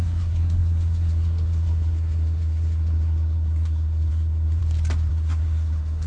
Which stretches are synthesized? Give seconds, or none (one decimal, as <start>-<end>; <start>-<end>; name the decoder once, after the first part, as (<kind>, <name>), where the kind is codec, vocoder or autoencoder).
0.0-4.6 (codec, SNAC); 5.1-6.1